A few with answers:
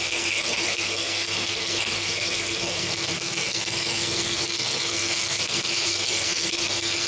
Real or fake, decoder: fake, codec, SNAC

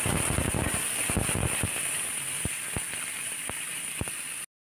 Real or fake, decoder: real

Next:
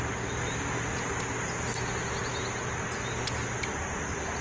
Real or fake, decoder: real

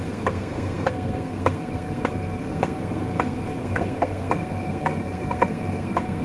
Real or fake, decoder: fake, codec, SNAC